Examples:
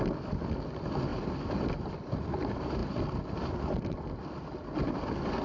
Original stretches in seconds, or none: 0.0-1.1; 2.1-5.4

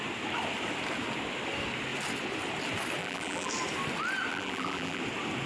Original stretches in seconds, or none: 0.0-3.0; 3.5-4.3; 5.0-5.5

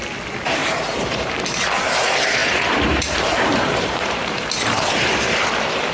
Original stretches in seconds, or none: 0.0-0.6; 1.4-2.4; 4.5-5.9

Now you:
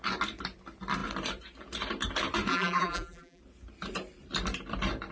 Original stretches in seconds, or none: 0.0-2.5; 3.4-5.1

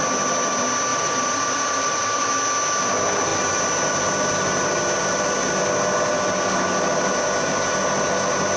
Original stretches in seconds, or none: 0.0-0.9; 2.3-8.6